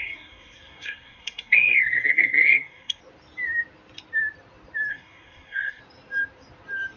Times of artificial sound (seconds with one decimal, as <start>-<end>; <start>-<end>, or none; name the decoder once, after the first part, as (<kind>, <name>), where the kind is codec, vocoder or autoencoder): 0.0-3.0 (codec, SNAC); 4.9-5.8